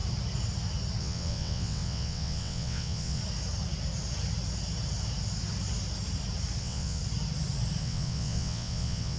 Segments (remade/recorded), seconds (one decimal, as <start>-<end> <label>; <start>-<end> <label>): 0.0-1.0 recorded; 1.0-3.2 remade; 3.2-6.6 recorded; 6.6-7.0 remade; 7.0-7.8 recorded; 7.8-9.2 remade